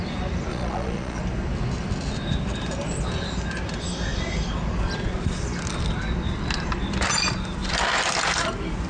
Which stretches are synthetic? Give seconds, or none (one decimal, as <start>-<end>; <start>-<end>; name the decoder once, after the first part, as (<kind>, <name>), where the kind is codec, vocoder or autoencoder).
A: 0.5-1.2 (vocoder, Vocos)